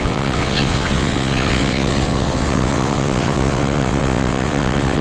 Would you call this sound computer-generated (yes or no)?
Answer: yes